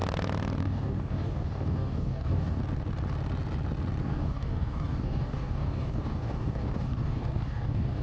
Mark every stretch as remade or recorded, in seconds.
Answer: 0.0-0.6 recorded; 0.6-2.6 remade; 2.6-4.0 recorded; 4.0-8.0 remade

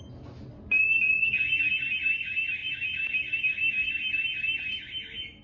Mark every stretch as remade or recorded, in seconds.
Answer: 0.0-5.4 recorded

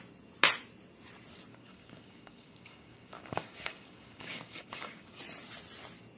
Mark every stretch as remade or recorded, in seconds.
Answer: 0.0-1.5 recorded; 1.5-5.2 remade; 5.2-6.2 recorded

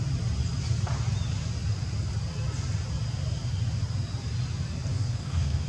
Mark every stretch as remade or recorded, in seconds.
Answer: 0.0-4.9 recorded; 4.9-5.7 remade

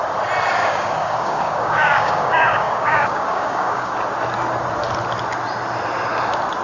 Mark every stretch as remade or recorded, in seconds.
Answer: 0.0-0.6 recorded; 0.6-3.9 remade; 3.9-6.6 recorded

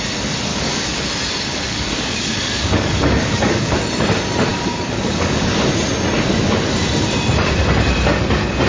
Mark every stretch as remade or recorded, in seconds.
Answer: 0.0-0.5 recorded; 0.5-1.1 remade; 1.1-1.5 recorded; 1.5-3.8 remade; 3.8-4.5 recorded; 4.5-5.6 remade; 5.6-8.7 recorded

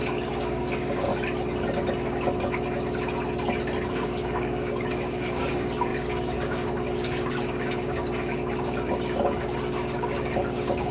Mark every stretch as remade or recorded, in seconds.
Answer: 0.0-1.1 remade; 1.1-3.9 recorded; 3.9-10.9 remade